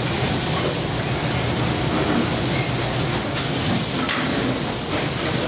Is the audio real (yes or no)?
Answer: yes